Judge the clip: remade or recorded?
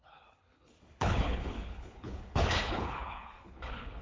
remade